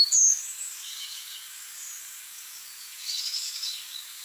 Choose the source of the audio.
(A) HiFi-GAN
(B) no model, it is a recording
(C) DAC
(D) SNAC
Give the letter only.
C